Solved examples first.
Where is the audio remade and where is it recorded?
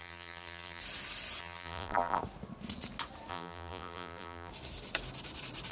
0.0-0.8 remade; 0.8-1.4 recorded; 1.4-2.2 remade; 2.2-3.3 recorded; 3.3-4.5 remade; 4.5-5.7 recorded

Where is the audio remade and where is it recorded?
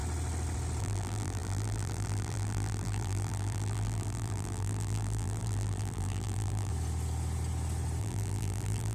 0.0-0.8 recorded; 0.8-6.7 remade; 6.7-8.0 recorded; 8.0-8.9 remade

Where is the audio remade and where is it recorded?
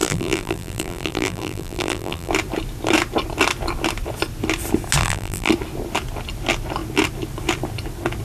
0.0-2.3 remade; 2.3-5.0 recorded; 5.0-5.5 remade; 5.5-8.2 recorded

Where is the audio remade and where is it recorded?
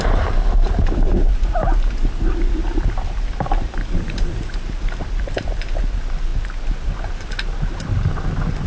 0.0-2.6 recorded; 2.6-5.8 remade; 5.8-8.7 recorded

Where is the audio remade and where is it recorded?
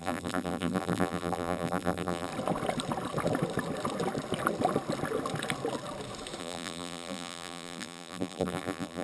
0.0-2.3 remade; 2.3-6.4 recorded; 6.4-9.0 remade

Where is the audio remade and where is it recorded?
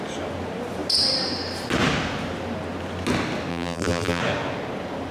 0.0-3.5 recorded; 3.5-4.2 remade; 4.2-5.1 recorded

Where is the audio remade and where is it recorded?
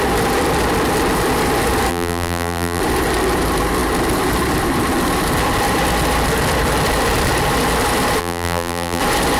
0.0-1.9 recorded; 1.9-2.8 remade; 2.8-8.2 recorded; 8.2-9.0 remade; 9.0-9.4 recorded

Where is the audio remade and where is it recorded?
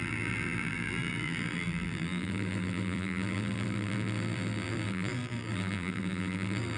0.0-6.8 remade